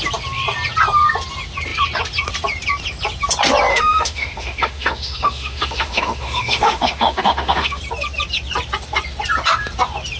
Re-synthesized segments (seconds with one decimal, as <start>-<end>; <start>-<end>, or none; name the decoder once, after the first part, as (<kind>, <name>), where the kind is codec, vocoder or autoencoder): 3.7-7.8 (autoencoder, DAC-VAE)